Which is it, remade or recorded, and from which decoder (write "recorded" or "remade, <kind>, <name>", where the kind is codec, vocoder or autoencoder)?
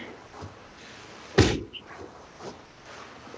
recorded